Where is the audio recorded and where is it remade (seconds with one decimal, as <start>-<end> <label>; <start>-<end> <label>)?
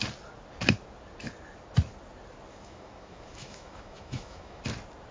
0.0-2.5 recorded; 2.5-4.6 remade; 4.6-5.1 recorded